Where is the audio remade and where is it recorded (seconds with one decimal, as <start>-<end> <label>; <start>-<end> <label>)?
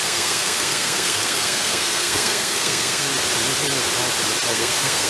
0.0-3.1 remade; 3.1-4.5 recorded; 4.5-5.1 remade